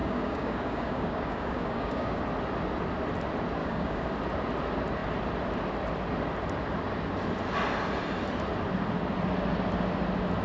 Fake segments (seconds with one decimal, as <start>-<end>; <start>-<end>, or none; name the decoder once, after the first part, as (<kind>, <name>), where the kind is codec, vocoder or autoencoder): 0.0-2.2 (codec, DAC); 3.6-4.1